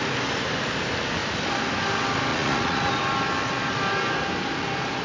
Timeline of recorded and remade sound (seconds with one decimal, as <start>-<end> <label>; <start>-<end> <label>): 0.0-2.3 recorded; 2.3-2.9 remade; 2.9-5.0 recorded